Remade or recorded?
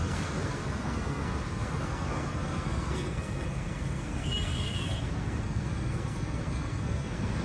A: remade